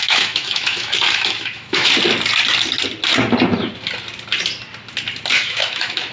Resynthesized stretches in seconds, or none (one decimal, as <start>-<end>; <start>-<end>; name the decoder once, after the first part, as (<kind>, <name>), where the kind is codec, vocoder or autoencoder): 0.0-1.9 (autoencoder, DAC-VAE); 5.3-6.1